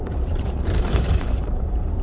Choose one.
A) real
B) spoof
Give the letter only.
B